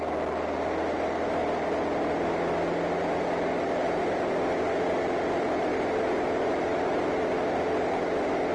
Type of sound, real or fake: real